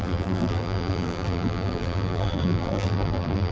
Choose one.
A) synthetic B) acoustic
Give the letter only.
A